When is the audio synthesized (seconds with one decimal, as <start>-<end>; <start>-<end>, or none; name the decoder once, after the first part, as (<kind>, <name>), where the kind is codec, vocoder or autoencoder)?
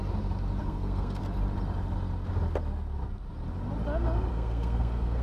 0.6-1.2 (codec, SNAC); 4.3-5.2